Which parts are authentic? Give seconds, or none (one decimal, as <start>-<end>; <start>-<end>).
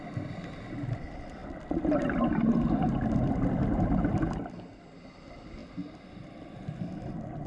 0.0-7.5